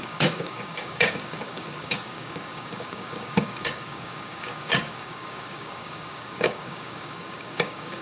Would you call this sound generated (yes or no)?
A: yes